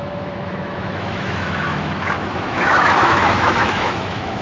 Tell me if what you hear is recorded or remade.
remade